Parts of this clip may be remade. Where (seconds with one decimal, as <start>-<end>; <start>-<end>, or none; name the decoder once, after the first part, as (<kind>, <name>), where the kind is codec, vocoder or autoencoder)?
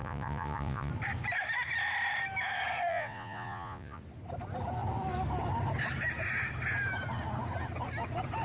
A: 0.0-0.9 (vocoder, Vocos); 2.9-4.0